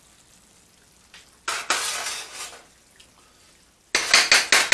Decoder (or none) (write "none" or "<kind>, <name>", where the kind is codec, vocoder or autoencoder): none